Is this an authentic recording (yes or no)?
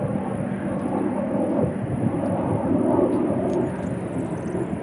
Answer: yes